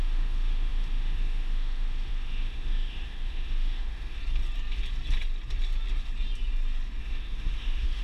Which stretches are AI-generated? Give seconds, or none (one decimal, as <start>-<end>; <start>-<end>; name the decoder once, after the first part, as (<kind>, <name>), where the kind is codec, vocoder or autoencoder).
0.0-4.2 (autoencoder, DAC-VAE); 7.0-8.0